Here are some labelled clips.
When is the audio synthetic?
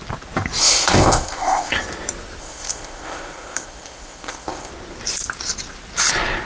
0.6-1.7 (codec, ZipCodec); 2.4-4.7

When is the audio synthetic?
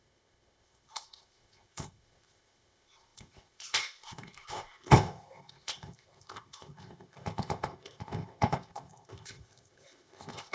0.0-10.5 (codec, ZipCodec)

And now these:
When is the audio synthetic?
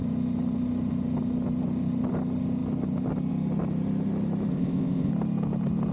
4.5-5.1 (codec, ZipCodec)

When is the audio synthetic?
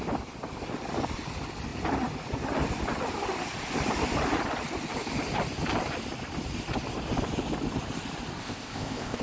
8.4-9.2 (codec, ZipCodec)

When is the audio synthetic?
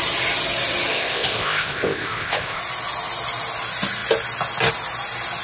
0.9-2.6 (codec, ZipCodec)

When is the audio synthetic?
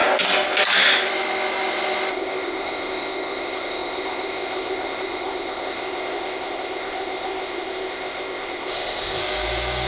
2.1-9.2 (codec, ZipCodec)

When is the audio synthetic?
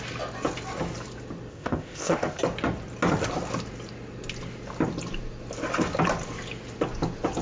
1.5-2.4 (codec, ZipCodec)